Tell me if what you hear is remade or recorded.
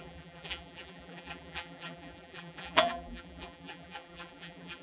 remade